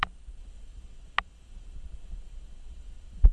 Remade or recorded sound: recorded